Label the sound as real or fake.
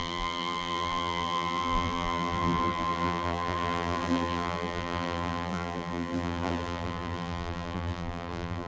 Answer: fake